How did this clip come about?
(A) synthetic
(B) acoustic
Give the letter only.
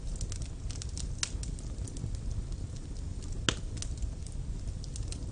B